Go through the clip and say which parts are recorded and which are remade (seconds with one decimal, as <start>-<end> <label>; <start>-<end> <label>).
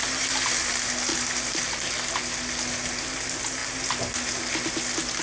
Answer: 0.0-0.7 remade; 0.7-1.1 recorded; 1.1-1.6 remade; 1.6-5.2 recorded